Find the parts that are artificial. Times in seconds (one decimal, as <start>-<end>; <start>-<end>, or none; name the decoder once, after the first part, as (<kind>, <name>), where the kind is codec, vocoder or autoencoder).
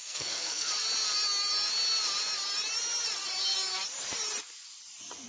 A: 0.0-0.7 (codec, SNAC)